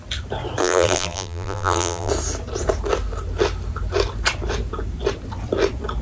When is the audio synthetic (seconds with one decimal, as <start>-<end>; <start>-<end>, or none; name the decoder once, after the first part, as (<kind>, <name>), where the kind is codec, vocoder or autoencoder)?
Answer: 0.6-2.1 (vocoder, BigVGAN v2)